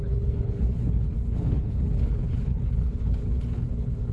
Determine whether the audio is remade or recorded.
remade